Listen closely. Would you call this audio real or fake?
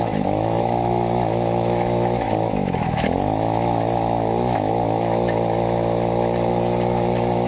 fake